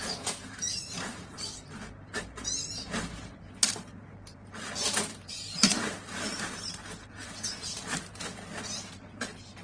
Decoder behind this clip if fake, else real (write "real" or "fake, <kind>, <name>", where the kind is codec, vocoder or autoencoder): fake, vocoder, BigVGAN v2